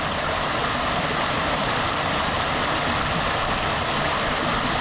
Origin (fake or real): real